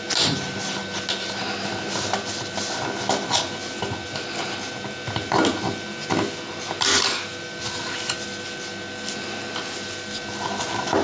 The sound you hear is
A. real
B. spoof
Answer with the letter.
A